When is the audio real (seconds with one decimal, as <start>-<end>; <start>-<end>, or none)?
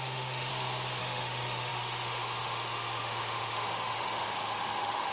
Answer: 0.5-1.0